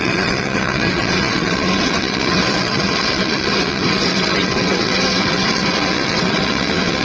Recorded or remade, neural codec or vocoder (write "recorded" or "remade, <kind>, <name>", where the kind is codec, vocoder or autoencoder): remade, vocoder, WaveNeXt